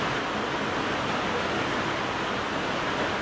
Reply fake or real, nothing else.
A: real